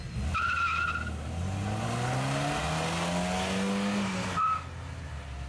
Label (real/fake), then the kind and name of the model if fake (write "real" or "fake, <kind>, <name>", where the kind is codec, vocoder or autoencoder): real